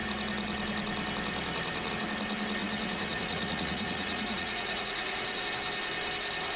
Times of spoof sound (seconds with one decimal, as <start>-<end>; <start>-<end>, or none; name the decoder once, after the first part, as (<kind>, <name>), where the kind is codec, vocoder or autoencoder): 2.6-5.4 (vocoder, Vocos)